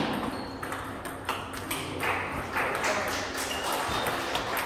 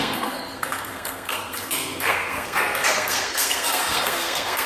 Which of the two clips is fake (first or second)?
second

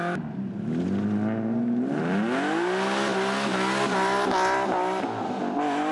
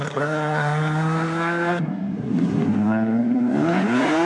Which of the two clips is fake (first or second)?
second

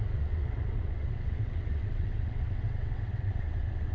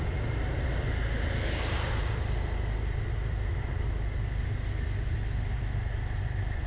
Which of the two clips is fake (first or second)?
first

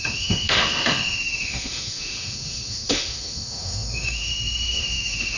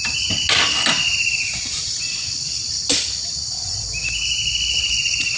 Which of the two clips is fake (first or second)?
first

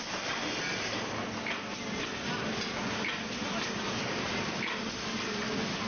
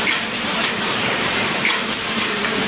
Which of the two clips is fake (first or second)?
second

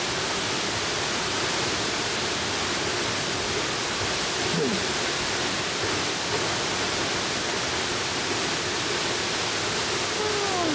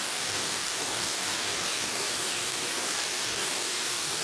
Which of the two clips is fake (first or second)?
second